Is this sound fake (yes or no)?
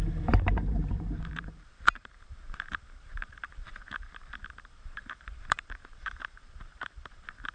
yes